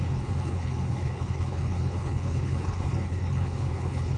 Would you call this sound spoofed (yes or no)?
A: yes